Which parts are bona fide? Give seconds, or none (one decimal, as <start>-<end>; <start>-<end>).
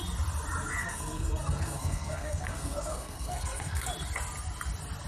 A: 0.0-0.8; 3.9-5.1